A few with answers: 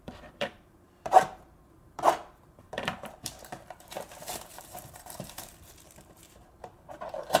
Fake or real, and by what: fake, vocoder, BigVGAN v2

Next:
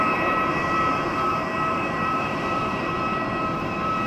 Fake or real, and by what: fake, vocoder, BigVGAN v2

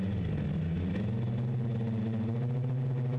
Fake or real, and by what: real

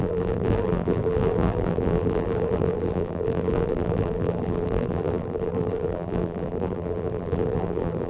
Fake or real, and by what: fake, vocoder, BigVGAN v2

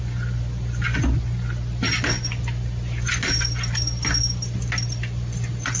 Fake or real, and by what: real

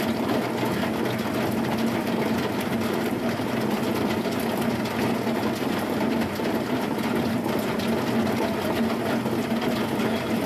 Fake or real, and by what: real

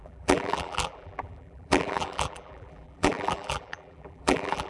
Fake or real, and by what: fake, vocoder, BigVGAN v2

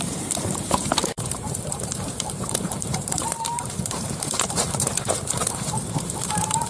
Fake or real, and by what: fake, vocoder, BigVGAN v2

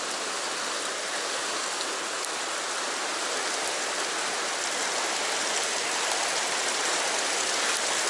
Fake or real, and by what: real